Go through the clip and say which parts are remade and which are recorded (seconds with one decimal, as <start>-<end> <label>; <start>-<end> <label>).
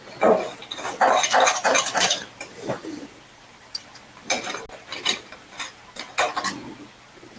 0.0-1.7 recorded; 1.7-4.3 remade; 4.3-7.4 recorded